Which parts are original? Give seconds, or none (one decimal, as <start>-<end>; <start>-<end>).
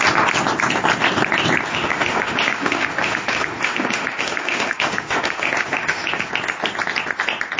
0.0-1.7; 6.3-7.6